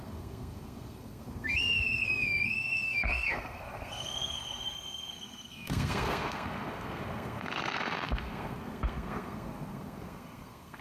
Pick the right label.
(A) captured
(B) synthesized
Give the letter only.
B